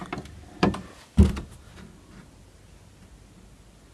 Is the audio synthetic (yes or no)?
no